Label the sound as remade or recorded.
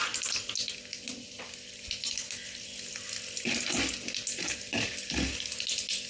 recorded